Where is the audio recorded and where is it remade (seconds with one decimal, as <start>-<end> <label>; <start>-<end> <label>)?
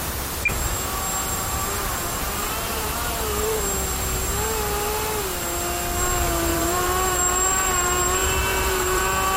0.0-1.2 recorded; 1.2-3.6 remade; 3.6-6.5 recorded; 6.5-9.0 remade; 9.0-9.4 recorded